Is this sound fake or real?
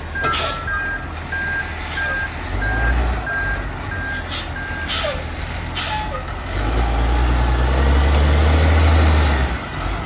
real